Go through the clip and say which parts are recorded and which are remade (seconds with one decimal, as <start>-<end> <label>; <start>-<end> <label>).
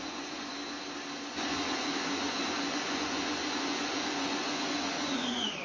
0.0-0.5 remade; 0.5-1.3 recorded; 1.3-5.6 remade